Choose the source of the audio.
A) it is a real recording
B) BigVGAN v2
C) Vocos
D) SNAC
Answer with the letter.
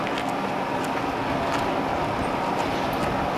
A